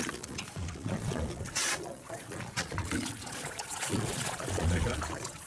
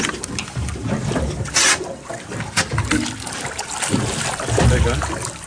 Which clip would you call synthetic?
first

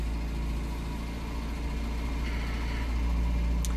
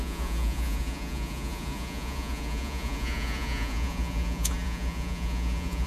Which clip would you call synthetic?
second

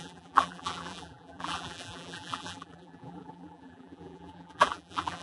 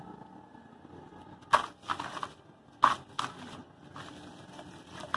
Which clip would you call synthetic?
first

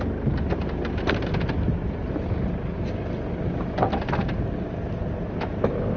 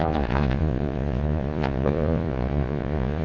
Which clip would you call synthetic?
second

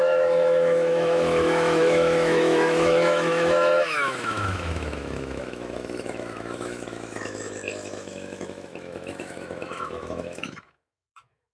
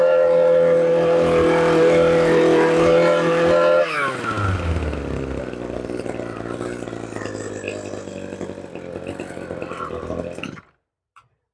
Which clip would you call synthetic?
first